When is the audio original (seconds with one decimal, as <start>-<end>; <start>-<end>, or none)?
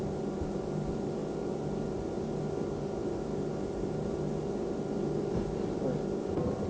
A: 0.0-6.7